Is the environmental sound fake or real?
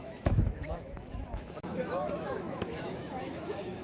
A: fake